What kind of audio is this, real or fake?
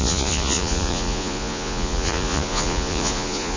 fake